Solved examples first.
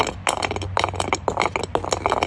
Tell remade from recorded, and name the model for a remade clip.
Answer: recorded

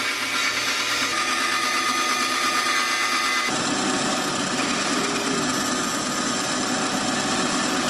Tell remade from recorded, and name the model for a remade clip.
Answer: recorded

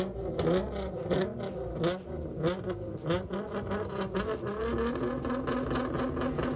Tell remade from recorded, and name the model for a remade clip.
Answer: recorded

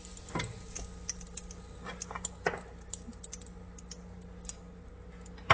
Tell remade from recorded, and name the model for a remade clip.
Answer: recorded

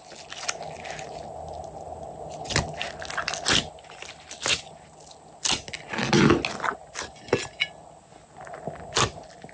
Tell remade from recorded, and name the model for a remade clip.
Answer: recorded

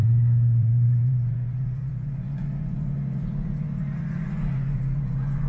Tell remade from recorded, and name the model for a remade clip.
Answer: remade, vocoder, Vocos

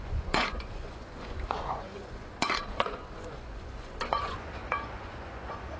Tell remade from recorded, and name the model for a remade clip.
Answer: remade, vocoder, Vocos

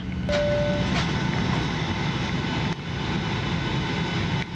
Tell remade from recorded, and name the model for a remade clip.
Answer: recorded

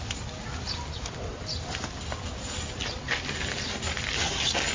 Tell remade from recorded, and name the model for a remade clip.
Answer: recorded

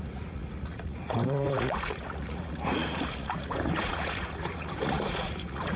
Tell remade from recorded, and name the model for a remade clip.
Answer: remade, vocoder, Vocos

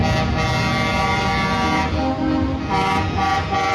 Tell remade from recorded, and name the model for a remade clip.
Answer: recorded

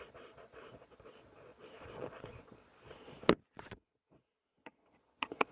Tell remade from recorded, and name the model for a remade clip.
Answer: remade, vocoder, Vocos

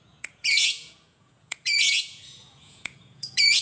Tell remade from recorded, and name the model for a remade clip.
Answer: remade, vocoder, Vocos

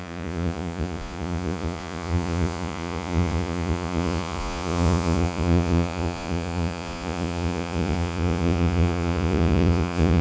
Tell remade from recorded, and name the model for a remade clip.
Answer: remade, vocoder, Vocos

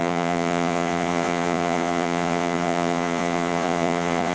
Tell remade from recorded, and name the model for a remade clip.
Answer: remade, vocoder, Vocos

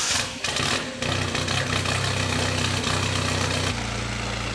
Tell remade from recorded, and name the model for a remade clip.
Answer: recorded